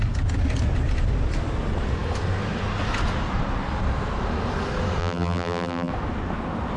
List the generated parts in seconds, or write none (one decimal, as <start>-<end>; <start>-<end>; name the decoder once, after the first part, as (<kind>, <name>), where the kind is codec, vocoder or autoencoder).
5.0-5.9 (vocoder, BigVGAN v2)